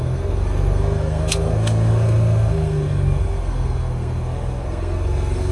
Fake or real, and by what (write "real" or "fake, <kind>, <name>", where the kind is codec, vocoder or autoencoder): fake, codec, SNAC